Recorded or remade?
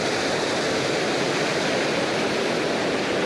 recorded